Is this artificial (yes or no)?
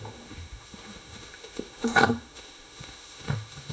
yes